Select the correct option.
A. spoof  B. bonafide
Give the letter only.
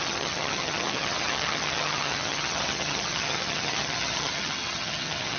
A